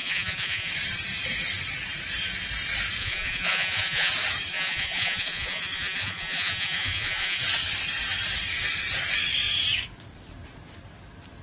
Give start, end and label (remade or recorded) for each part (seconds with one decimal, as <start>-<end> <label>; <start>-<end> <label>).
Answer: 0.0-0.7 remade; 0.7-3.0 recorded; 3.0-4.1 remade; 4.1-4.5 recorded; 4.5-7.4 remade; 7.4-11.4 recorded